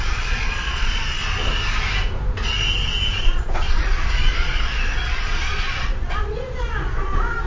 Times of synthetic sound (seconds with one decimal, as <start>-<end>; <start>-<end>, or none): 0.0-1.2; 3.2-7.5